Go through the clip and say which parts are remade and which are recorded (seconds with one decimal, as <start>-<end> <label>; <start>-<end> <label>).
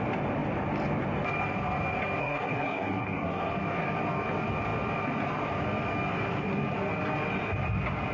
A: 0.0-2.2 recorded; 2.2-3.5 remade; 3.5-8.1 recorded